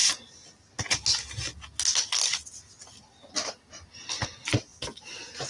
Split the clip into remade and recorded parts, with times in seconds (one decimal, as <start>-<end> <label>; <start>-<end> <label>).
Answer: 0.0-5.5 recorded